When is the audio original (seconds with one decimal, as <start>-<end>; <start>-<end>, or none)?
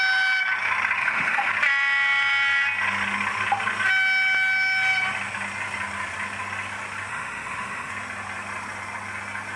0.0-1.0; 1.5-7.1; 7.9-9.6